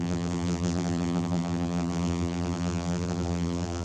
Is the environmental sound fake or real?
fake